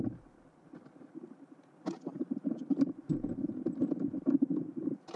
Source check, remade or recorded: recorded